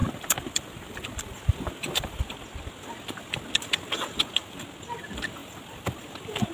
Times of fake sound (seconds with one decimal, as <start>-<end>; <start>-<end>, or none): 0.0-2.2; 5.4-6.0